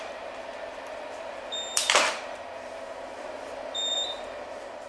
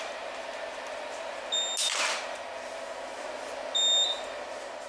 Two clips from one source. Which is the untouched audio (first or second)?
second